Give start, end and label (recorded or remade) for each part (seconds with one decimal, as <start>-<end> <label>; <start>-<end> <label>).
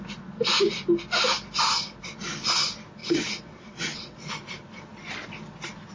0.0-3.0 recorded; 3.0-4.3 remade; 4.3-5.9 recorded